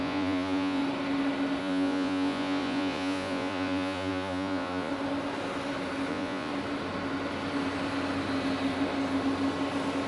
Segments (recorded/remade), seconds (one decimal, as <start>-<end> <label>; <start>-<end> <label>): 0.0-0.8 remade; 0.8-1.6 recorded; 1.6-4.9 remade; 4.9-6.1 recorded; 6.1-6.5 remade; 6.5-10.1 recorded